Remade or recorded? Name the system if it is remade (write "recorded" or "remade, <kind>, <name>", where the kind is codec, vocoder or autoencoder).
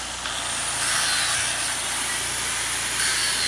recorded